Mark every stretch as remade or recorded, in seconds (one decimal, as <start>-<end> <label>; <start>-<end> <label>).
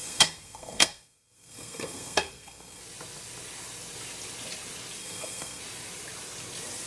0.0-2.8 remade; 2.8-5.0 recorded; 5.0-5.6 remade; 5.6-6.9 recorded